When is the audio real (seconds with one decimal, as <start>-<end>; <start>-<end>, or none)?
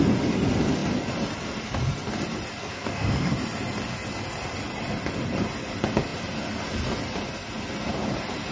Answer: 0.0-2.6; 3.3-8.5